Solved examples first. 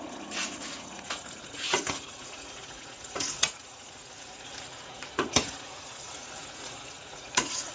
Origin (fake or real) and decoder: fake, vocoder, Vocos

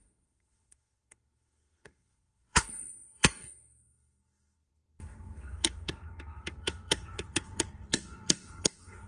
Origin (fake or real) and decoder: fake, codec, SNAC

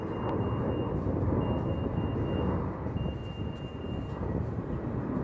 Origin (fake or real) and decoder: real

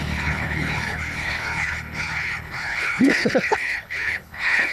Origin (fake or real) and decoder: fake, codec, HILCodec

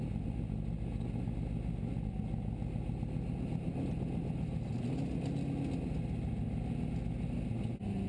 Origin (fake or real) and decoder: real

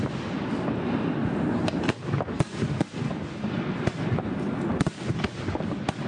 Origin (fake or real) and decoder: real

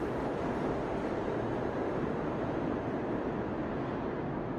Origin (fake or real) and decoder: real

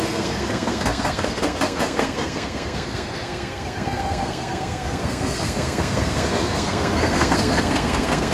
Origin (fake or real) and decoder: fake, codec, SNAC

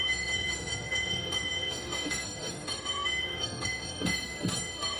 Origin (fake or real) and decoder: fake, autoencoder, DAC-VAE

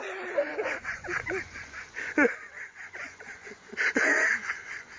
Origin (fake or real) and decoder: fake, vocoder, Vocos